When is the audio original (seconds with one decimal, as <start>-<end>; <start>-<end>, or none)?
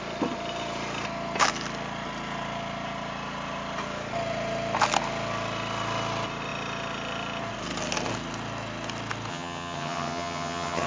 0.0-9.3